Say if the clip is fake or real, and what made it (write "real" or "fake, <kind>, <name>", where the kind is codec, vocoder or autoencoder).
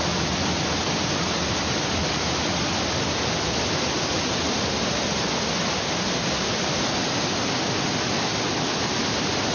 real